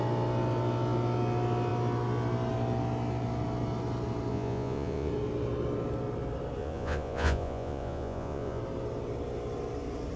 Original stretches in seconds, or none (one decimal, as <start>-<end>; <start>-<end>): 0.0-4.3; 5.1-6.6; 8.6-10.2